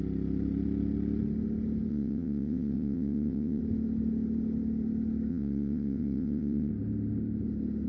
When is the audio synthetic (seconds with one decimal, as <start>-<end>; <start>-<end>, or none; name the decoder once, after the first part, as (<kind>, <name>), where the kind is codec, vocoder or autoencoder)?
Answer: 1.9-3.6 (vocoder, WaveNeXt); 5.3-6.7